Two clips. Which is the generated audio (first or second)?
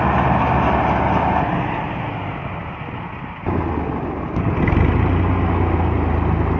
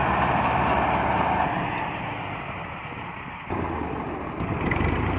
second